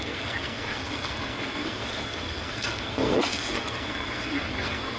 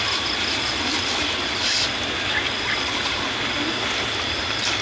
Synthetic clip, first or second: first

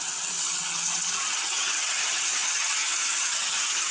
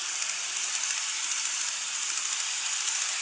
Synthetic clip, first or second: first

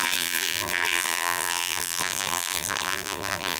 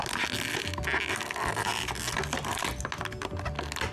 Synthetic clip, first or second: first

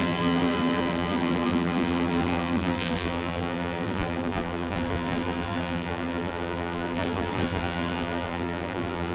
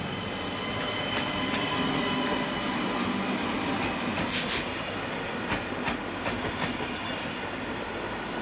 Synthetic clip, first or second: first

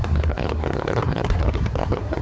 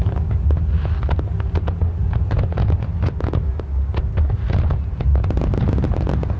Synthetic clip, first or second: first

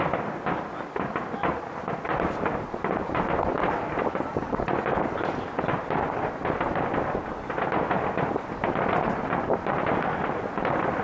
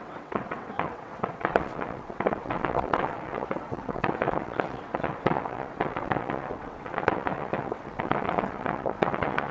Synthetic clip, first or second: second